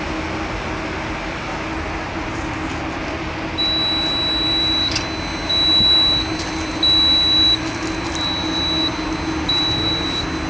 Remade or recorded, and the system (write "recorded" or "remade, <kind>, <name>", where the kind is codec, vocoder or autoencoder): recorded